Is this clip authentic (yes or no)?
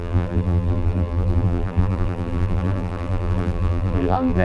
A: no